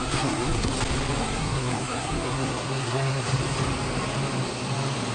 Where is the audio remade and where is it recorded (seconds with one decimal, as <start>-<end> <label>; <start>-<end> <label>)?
0.0-0.7 remade; 0.7-1.2 recorded; 1.2-3.4 remade; 3.4-5.1 recorded